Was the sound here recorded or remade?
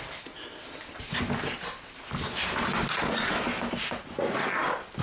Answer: recorded